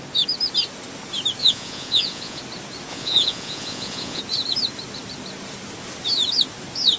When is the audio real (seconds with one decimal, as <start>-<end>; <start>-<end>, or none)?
0.0-1.4; 2.4-2.9; 4.2-7.0